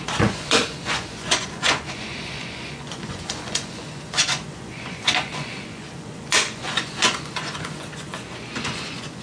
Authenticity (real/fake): fake